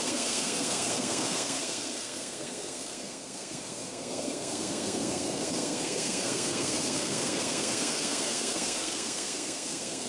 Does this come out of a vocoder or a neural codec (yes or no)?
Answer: yes